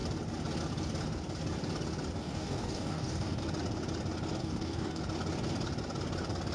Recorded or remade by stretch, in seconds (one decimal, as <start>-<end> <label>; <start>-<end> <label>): 0.0-2.2 recorded; 2.2-3.4 remade; 3.4-4.4 recorded; 4.4-5.0 remade; 5.0-6.5 recorded